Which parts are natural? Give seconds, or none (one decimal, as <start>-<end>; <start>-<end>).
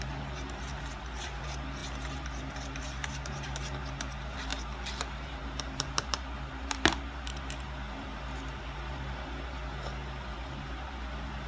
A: none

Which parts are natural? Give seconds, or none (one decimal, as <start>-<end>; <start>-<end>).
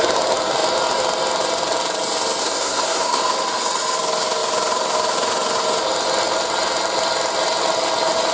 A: 0.0-2.4; 3.2-8.3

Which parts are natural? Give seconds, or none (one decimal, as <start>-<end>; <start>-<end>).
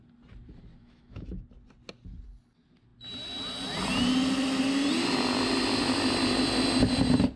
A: 0.0-0.8; 1.4-7.4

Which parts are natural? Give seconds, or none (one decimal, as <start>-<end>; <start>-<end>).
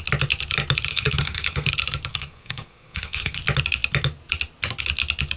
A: 0.0-0.9; 1.7-2.1; 3.4-5.4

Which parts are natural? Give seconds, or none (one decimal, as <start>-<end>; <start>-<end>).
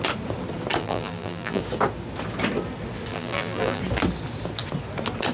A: 0.0-0.8; 1.6-3.1; 3.8-5.3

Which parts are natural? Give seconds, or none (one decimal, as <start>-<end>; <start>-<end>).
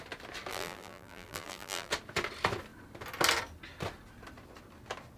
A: 0.0-0.5; 1.9-5.2